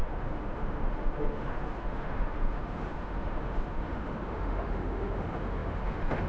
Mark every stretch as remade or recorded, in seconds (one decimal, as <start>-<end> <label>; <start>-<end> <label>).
0.0-6.3 remade